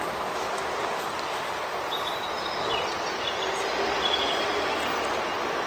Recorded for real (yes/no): yes